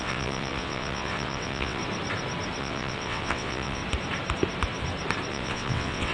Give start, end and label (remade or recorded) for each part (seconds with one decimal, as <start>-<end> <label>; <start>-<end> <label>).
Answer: 0.0-1.8 remade; 1.8-2.6 recorded; 2.6-3.8 remade; 3.8-5.3 recorded; 5.3-6.1 remade